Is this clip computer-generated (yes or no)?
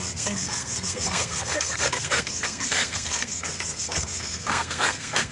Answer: yes